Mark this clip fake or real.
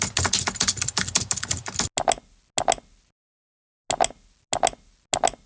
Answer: real